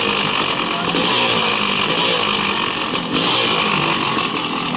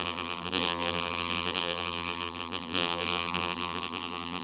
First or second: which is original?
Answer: first